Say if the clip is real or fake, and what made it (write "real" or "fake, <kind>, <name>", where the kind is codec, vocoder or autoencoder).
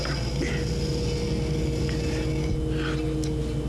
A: real